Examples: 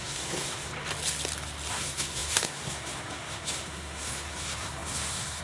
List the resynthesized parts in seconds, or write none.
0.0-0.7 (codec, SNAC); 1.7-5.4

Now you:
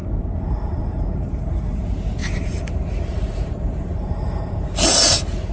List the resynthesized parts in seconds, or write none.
0.0-1.6 (vocoder, BigVGAN v2); 2.2-4.4

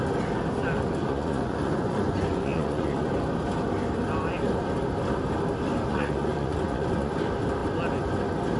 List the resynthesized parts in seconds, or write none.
1.0-3.1 (vocoder, Vocos); 5.9-7.1

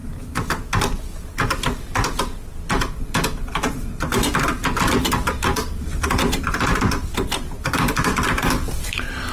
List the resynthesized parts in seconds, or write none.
none

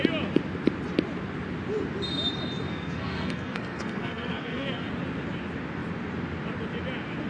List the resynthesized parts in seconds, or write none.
2.7-4.9 (codec, SNAC)

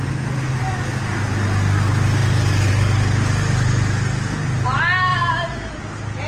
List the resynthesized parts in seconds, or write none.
5.1-5.8 (vocoder, BigVGAN v2)

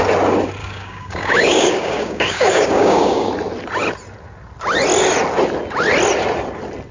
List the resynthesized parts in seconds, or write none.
0.6-3.3 (codec, DAC)